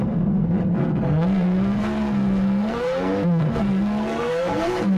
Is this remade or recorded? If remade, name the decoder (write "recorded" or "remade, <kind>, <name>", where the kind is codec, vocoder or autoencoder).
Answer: remade, codec, SNAC